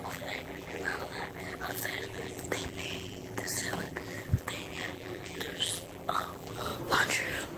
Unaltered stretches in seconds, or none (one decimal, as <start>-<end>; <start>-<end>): 6.7-7.6